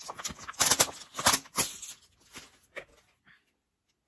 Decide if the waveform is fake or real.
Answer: real